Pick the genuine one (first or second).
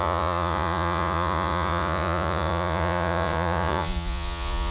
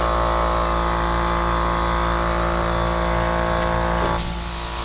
second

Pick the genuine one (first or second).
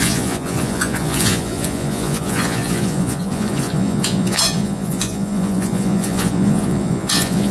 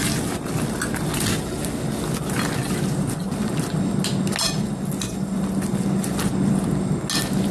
second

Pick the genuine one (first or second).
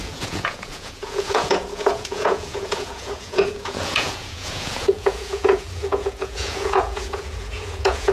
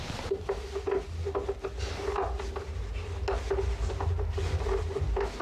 second